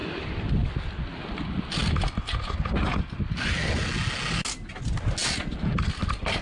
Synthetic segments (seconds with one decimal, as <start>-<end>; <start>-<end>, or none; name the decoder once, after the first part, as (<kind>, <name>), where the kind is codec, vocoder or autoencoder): none